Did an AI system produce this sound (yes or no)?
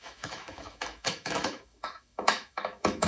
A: yes